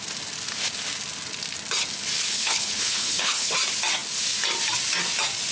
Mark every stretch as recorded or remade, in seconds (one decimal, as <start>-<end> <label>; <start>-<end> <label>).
0.0-2.3 recorded; 2.3-3.5 remade; 3.5-5.5 recorded